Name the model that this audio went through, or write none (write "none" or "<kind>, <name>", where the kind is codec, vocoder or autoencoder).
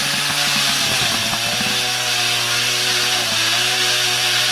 none